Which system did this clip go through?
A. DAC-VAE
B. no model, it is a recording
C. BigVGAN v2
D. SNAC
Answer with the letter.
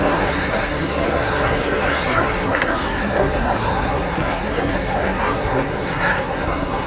D